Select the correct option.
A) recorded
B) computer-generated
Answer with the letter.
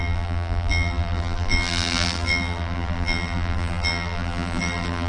B